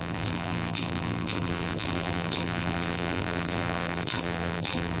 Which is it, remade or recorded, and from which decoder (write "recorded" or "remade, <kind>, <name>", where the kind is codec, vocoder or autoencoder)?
remade, vocoder, BigVGAN v2